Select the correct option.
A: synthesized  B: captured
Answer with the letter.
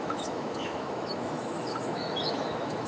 A